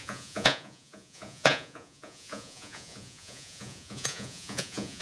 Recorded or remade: remade